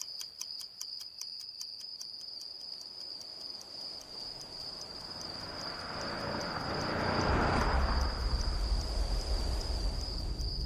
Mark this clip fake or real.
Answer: fake